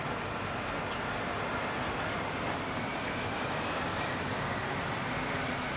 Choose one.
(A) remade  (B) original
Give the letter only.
B